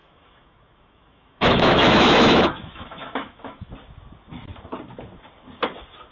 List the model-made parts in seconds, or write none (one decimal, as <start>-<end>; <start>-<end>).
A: 0.0-3.7